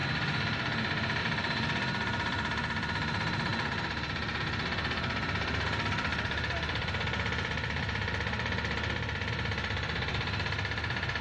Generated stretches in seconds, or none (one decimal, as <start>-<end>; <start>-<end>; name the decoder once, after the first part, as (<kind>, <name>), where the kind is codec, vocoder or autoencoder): 1.2-3.5 (vocoder, BigVGAN v2); 4.4-11.2